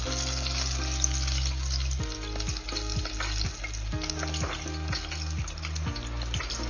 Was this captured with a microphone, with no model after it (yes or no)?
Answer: yes